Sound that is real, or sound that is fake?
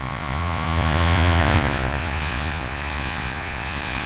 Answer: fake